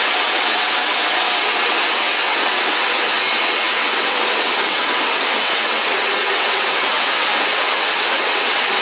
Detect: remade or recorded remade